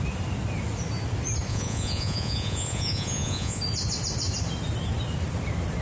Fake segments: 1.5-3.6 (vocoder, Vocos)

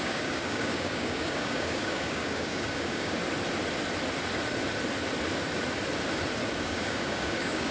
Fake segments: 0.0-3.2 (codec, DAC); 6.5-7.7